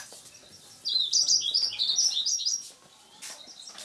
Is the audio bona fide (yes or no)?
yes